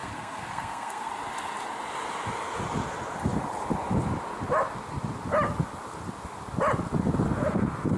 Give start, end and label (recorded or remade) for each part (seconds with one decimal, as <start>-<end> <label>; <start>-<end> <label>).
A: 0.0-1.1 remade; 1.1-8.0 recorded